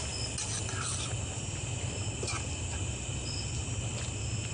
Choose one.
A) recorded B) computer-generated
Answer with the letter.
A